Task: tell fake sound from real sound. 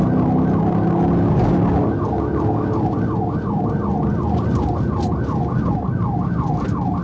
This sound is real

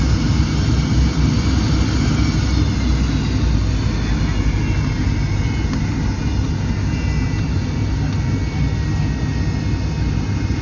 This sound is real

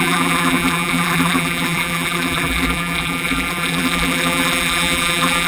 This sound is fake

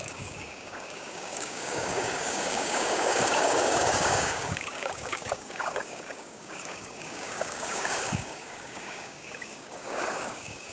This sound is fake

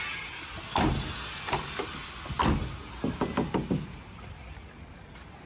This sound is real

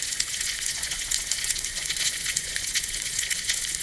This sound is fake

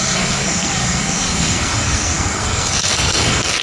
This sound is fake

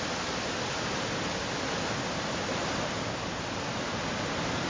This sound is real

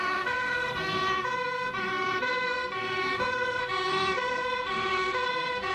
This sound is fake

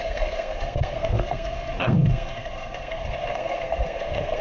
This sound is fake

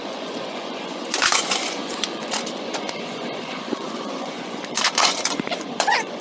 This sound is fake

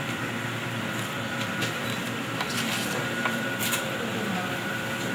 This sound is fake